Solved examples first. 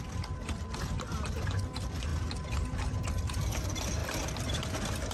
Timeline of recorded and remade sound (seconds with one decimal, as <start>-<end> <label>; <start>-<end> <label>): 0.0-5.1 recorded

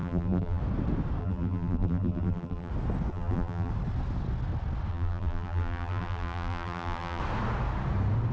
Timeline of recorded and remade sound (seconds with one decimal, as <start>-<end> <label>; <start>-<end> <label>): 0.0-0.6 remade; 0.6-1.2 recorded; 1.2-2.7 remade; 2.7-3.1 recorded; 3.1-3.7 remade; 3.7-4.9 recorded; 4.9-7.2 remade; 7.2-8.3 recorded

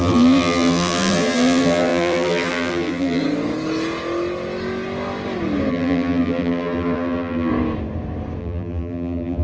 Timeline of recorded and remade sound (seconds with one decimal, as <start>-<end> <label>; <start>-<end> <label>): 0.0-3.2 remade; 3.2-5.7 recorded; 5.7-7.5 remade; 7.5-8.4 recorded; 8.4-9.4 remade

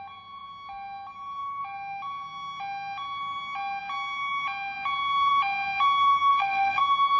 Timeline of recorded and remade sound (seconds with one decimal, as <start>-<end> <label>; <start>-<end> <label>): 0.0-6.3 recorded; 6.3-6.8 remade; 6.8-7.2 recorded

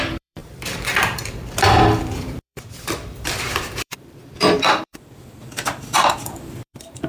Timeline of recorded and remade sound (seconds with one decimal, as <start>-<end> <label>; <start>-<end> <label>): 0.0-7.1 remade

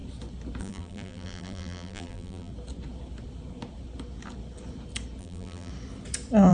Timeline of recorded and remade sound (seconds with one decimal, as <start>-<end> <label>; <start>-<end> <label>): 0.0-0.6 recorded; 0.6-2.5 remade; 2.5-5.2 recorded; 5.2-5.7 remade; 5.7-6.5 recorded